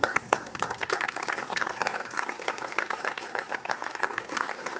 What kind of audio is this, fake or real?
fake